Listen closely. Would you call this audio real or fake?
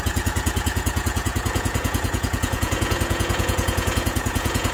fake